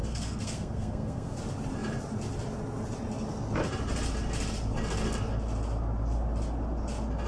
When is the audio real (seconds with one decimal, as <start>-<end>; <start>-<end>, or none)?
1.4-7.3